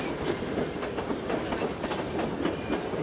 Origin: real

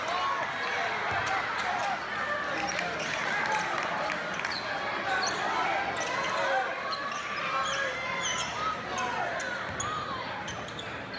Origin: real